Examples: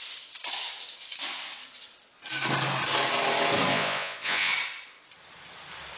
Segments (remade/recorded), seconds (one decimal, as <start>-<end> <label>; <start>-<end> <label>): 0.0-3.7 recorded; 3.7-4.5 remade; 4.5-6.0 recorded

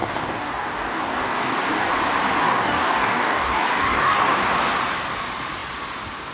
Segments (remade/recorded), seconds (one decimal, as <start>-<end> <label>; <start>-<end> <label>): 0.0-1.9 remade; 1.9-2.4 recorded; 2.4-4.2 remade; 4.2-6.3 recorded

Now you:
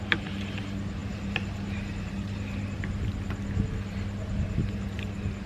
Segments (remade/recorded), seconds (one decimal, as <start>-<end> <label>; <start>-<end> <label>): 0.0-5.5 recorded

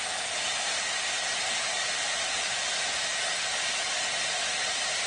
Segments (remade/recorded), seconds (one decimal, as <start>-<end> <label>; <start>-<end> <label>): 0.0-5.1 recorded

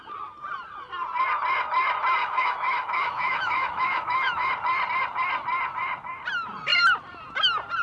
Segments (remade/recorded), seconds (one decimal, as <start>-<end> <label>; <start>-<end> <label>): 0.0-2.2 recorded; 2.2-4.5 remade; 4.5-7.8 recorded